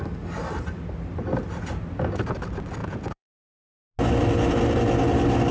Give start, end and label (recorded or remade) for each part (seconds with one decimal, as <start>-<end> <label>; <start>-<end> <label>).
0.0-2.8 recorded; 2.8-3.4 remade; 3.4-5.5 recorded

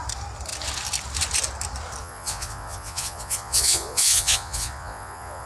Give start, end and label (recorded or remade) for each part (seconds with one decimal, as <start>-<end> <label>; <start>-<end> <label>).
0.0-2.0 recorded; 2.0-5.5 remade

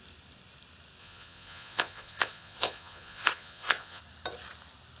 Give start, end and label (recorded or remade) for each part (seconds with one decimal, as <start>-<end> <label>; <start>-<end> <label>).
0.0-1.0 recorded; 1.0-4.0 remade; 4.0-5.0 recorded